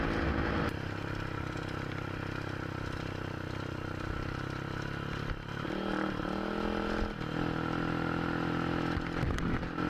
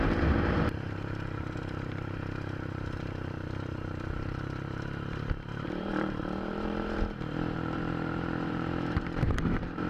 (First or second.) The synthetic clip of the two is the second